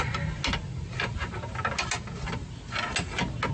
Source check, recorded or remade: recorded